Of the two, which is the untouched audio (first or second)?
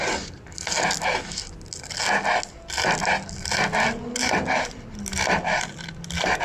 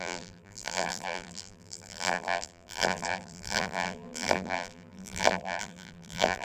first